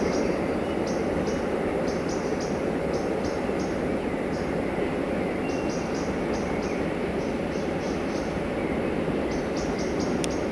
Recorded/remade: recorded